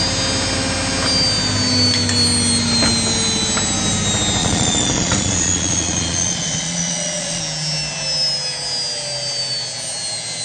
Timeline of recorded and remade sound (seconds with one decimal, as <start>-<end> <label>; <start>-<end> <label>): 0.0-4.4 recorded; 4.4-7.4 remade; 7.4-10.4 recorded